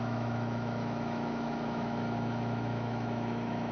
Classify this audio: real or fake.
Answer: fake